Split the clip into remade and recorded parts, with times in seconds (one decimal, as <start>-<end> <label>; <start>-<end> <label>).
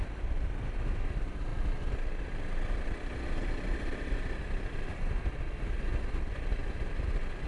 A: 0.0-7.5 recorded